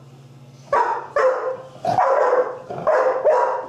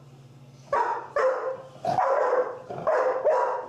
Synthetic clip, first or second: second